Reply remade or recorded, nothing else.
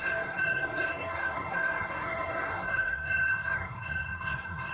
remade